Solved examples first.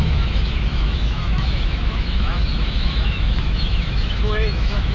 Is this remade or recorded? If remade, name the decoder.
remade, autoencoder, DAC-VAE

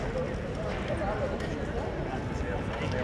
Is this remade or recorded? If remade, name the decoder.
recorded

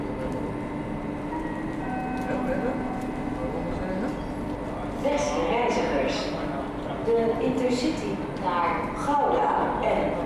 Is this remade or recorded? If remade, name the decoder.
recorded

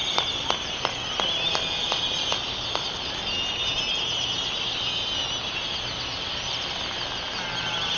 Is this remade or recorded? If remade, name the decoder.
recorded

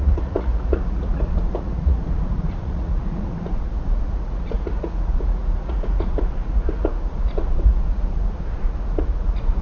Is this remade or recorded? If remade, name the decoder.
remade, vocoder, Vocos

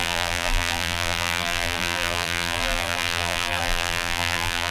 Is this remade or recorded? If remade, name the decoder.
remade, vocoder, BigVGAN v2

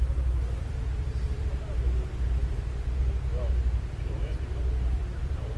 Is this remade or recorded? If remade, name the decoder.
remade, vocoder, BigVGAN v2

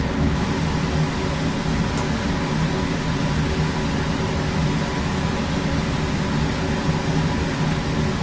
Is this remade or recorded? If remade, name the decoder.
recorded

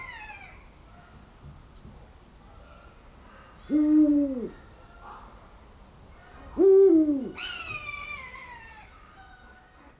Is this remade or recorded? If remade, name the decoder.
recorded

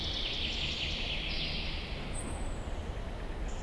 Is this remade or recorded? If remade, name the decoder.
recorded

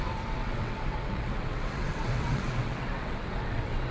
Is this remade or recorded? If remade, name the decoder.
remade, vocoder, WaveNeXt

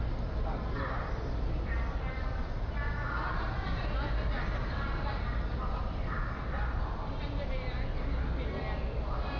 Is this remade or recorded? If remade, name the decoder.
recorded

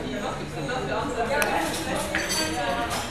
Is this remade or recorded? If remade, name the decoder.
recorded